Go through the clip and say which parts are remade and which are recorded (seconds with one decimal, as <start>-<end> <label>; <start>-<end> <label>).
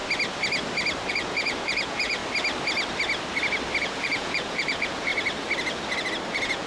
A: 0.0-1.1 recorded; 1.1-2.2 remade; 2.2-3.8 recorded; 3.8-5.1 remade; 5.1-6.3 recorded; 6.3-6.7 remade